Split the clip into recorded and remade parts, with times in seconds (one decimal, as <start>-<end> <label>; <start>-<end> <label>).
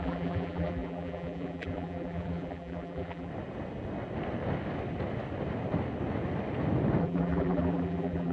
0.0-3.3 remade; 3.3-7.0 recorded; 7.0-8.3 remade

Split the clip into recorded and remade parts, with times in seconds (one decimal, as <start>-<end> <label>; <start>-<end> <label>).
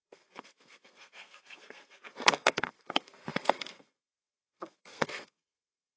0.0-6.0 remade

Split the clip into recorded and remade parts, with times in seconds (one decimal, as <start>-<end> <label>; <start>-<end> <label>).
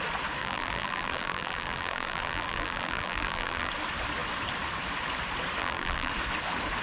0.0-0.4 recorded; 0.4-3.7 remade; 3.7-5.6 recorded; 5.6-6.1 remade; 6.1-6.8 recorded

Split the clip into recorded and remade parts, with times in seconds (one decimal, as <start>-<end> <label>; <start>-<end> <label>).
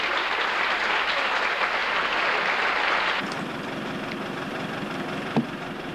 0.0-5.9 recorded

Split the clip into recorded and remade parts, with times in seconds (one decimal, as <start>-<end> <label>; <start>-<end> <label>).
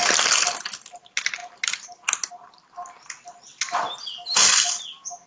0.0-5.3 recorded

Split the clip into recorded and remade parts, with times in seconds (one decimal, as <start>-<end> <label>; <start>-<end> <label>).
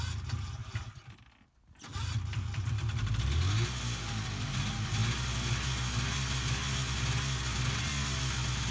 0.0-8.7 recorded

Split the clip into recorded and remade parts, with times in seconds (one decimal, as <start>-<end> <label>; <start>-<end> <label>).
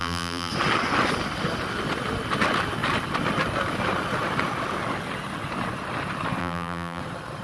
0.0-0.5 remade; 0.5-6.4 recorded; 6.4-7.0 remade; 7.0-7.4 recorded